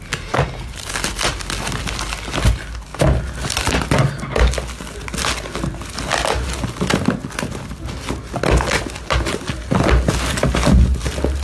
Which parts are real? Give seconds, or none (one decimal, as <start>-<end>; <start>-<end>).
0.0-11.4